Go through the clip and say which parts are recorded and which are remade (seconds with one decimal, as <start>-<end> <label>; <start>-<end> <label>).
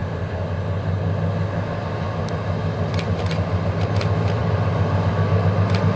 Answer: 0.0-6.0 recorded